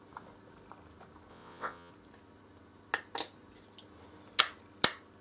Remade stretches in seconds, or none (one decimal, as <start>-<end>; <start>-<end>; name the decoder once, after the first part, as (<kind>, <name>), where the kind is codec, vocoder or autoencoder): 1.3-1.9 (vocoder, WaveNeXt)